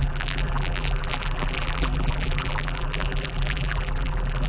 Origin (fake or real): fake